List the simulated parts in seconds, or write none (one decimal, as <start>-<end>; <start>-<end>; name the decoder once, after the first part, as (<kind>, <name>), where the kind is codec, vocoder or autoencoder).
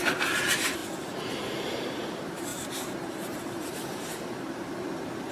2.5-4.7 (vocoder, BigVGAN v2)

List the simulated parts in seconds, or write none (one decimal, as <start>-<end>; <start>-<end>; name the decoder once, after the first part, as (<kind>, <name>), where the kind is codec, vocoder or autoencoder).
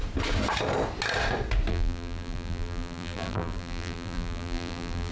1.7-5.1 (vocoder, BigVGAN v2)